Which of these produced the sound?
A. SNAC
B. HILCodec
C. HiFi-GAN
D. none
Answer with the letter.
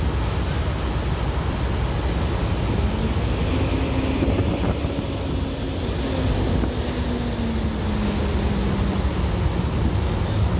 D